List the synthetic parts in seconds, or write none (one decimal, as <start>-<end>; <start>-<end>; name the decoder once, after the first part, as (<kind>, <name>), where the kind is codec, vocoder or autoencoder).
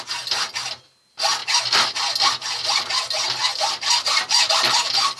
none